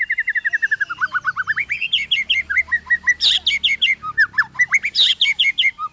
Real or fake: real